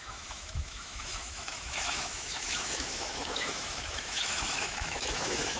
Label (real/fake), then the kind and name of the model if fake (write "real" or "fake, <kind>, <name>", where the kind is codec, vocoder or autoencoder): fake, autoencoder, DAC-VAE